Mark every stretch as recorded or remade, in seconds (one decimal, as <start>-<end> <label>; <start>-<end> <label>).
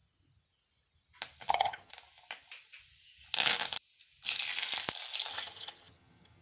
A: 0.0-1.5 recorded; 1.5-1.9 remade; 1.9-5.3 recorded; 5.3-6.4 remade